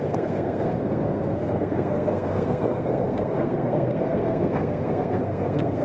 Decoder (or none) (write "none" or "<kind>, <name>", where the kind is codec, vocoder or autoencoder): codec, SNAC